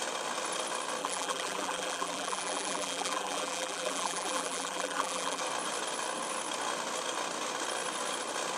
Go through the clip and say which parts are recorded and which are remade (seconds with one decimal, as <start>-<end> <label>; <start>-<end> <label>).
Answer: 0.0-1.0 recorded; 1.0-5.4 remade; 5.4-8.6 recorded